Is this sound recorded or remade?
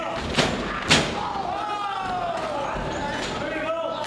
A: recorded